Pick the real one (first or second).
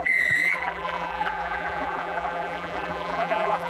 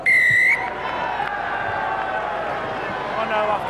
second